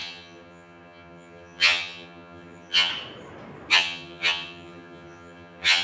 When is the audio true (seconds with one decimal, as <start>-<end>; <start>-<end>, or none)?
2.9-3.7